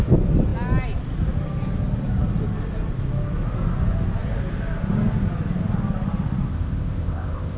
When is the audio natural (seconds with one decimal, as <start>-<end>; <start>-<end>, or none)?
0.0-6.5

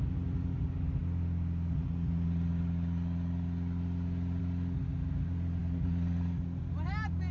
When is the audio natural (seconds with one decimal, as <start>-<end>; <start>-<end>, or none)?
0.0-7.3

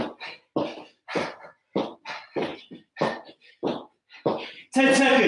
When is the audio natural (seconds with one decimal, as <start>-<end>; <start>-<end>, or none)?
0.0-5.3

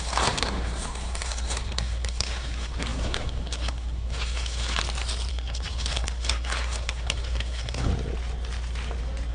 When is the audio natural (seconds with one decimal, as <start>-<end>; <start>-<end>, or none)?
4.8-5.3; 7.9-9.3

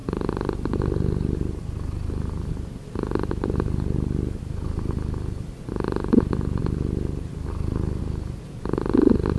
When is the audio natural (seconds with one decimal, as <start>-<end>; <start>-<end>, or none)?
0.0-9.4

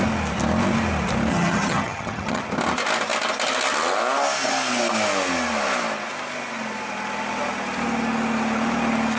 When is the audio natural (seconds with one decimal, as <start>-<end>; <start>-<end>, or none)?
0.0-1.3; 2.4-9.2

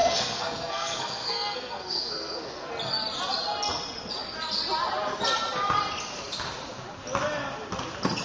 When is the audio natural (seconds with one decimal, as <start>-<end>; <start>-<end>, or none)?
2.7-8.2